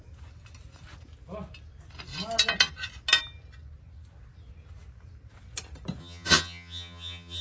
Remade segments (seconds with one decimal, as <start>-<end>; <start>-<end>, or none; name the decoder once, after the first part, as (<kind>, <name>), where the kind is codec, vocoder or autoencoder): 6.0-7.4 (vocoder, HiFi-GAN)